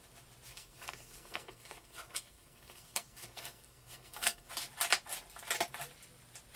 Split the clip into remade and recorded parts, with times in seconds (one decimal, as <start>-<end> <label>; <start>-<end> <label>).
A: 0.0-0.5 recorded; 0.5-4.5 remade; 4.5-6.6 recorded